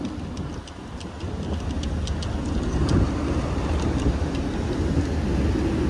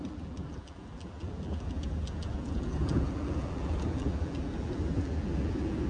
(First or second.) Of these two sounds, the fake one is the second